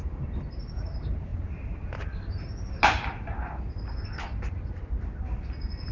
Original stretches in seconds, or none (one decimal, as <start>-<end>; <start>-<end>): 0.0-5.9